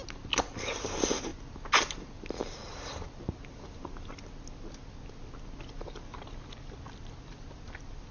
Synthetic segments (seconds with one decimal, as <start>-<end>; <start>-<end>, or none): none